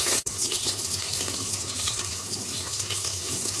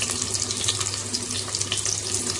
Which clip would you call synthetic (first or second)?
first